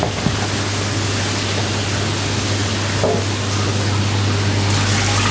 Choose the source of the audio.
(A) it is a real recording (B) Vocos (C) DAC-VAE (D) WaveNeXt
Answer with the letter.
A